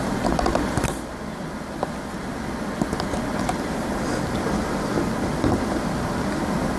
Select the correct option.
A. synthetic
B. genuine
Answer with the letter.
B